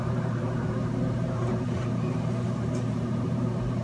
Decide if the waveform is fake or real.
fake